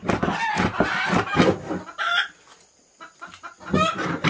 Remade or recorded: recorded